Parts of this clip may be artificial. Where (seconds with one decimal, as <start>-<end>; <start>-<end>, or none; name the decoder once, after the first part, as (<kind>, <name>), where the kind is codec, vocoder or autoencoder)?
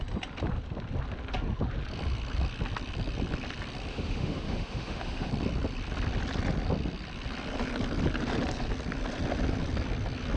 3.9-5.3 (autoencoder, DAC-VAE)